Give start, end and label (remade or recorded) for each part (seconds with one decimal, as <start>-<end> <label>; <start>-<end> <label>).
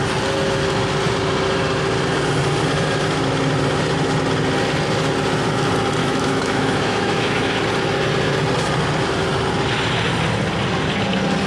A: 0.0-6.0 recorded; 6.0-7.6 remade; 7.6-11.5 recorded